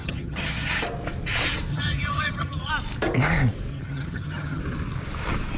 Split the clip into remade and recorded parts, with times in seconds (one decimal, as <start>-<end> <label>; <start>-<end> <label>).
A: 0.0-0.8 remade; 0.8-1.7 recorded; 1.7-2.7 remade; 2.7-3.7 recorded; 3.7-4.6 remade; 4.6-5.6 recorded